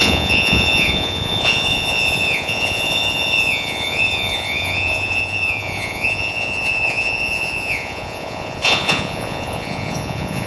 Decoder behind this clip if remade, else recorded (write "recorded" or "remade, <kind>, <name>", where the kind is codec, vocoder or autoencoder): remade, vocoder, Vocos